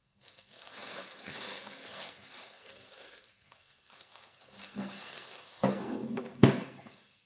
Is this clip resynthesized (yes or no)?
yes